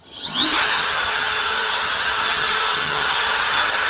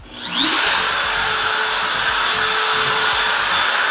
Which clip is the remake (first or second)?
first